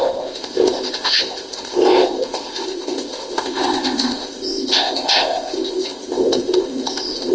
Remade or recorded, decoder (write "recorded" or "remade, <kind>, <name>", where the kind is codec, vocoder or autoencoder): remade, codec, ZipCodec